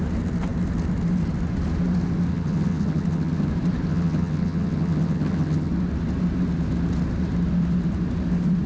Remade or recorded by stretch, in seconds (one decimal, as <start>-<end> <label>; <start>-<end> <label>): 0.0-2.3 recorded; 2.3-3.5 remade; 3.5-3.9 recorded; 3.9-5.7 remade; 5.7-8.7 recorded